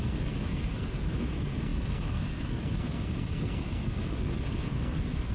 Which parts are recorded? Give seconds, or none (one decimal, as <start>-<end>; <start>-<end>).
none